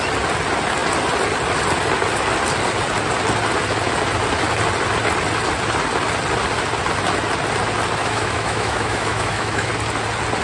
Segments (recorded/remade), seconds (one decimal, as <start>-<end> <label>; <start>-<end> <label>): 0.0-8.0 recorded; 8.0-9.7 remade; 9.7-10.4 recorded